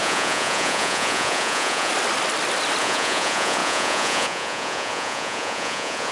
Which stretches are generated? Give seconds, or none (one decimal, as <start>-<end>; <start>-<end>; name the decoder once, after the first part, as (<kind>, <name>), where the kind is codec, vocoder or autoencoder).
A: 0.0-1.9 (vocoder, Vocos); 2.8-6.1